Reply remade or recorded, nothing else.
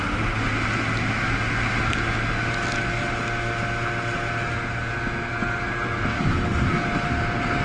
recorded